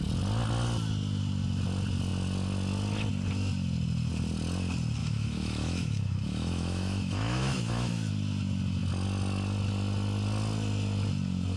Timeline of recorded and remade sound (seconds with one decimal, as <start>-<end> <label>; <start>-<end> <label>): 0.0-5.0 recorded; 5.0-8.1 remade; 8.1-11.6 recorded